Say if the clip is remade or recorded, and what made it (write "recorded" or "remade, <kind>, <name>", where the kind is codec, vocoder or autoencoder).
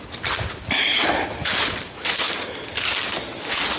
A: recorded